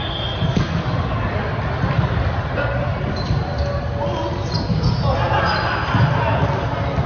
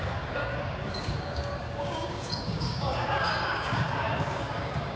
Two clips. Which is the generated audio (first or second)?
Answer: second